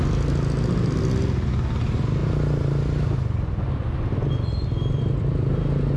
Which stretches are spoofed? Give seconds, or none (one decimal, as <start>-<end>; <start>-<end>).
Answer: none